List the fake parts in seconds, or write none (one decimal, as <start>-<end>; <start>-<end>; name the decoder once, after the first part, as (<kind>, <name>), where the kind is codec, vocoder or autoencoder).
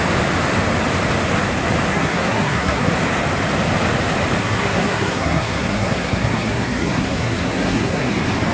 1.9-2.9 (codec, SNAC); 4.4-8.1